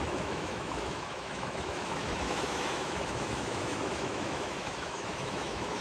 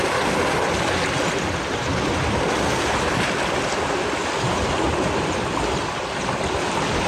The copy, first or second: first